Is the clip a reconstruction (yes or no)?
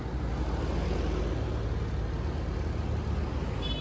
no